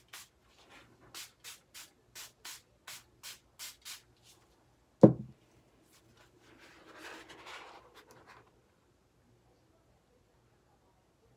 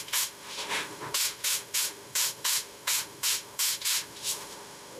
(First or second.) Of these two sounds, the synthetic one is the second